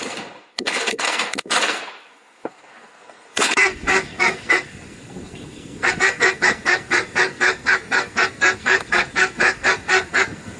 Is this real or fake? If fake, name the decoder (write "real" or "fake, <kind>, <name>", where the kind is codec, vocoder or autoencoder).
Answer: fake, codec, SNAC